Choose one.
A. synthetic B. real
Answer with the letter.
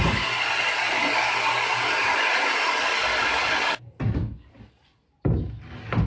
B